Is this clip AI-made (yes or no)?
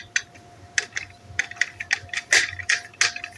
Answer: no